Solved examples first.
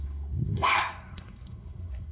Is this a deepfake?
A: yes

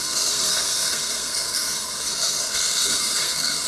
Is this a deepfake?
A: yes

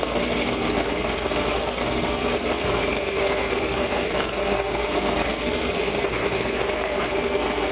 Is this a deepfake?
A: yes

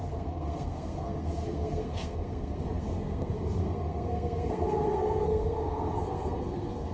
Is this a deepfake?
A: yes